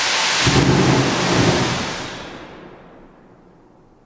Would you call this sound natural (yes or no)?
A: yes